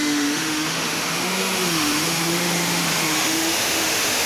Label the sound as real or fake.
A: fake